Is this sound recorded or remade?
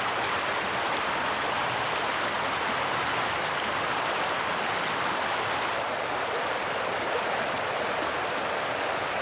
recorded